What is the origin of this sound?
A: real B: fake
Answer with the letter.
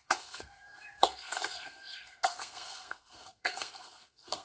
B